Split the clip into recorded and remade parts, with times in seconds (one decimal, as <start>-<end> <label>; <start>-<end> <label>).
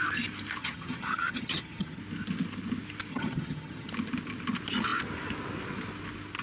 0.0-0.6 recorded; 0.6-2.0 remade; 2.0-3.1 recorded; 3.1-3.9 remade; 3.9-6.4 recorded